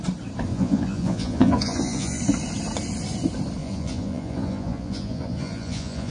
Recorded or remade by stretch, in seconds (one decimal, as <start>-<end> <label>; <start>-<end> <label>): 0.0-0.5 recorded; 0.5-2.2 remade; 2.2-3.6 recorded; 3.6-6.1 remade